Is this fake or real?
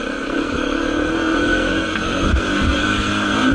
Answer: fake